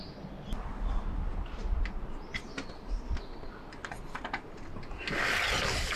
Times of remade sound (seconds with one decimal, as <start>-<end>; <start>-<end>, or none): none

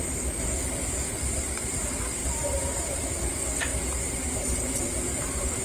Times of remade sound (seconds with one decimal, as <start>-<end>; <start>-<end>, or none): 1.1-1.8; 2.2-3.1

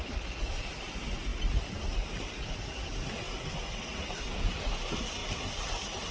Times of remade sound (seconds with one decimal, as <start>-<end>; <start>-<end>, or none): none

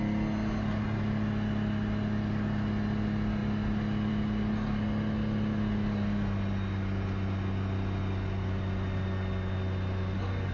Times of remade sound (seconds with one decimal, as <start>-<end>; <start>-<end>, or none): none

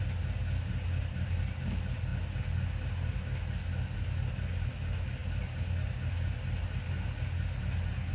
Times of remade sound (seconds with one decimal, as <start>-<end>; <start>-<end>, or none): none

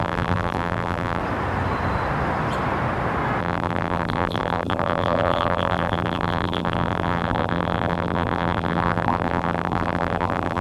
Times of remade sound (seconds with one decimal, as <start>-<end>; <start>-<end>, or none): 0.0-1.2; 3.4-10.6

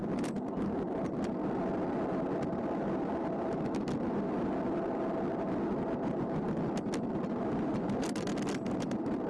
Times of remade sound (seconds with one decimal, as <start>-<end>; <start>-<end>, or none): none